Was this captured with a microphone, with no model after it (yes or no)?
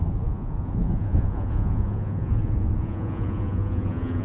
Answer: no